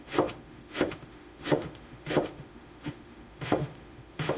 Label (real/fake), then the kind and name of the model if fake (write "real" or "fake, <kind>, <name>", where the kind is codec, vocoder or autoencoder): fake, autoencoder, DAC-VAE